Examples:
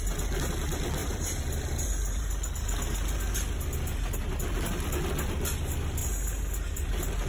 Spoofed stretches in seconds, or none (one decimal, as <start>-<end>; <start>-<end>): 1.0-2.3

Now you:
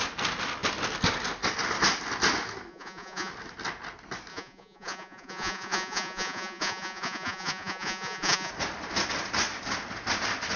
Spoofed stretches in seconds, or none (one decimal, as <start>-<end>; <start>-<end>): 2.7-3.3; 4.3-8.5

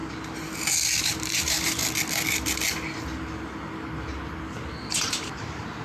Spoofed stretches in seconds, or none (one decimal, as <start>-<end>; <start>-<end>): 1.0-1.8; 4.9-5.8